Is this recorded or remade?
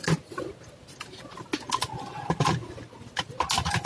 recorded